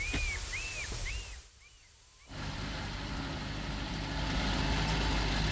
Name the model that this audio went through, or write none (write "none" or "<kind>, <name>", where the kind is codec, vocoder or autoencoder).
none